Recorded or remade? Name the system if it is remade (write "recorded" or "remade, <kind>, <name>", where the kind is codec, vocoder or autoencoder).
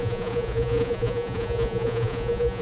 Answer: remade, vocoder, Vocos